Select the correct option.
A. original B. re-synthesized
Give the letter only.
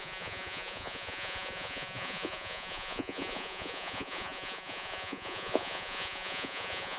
B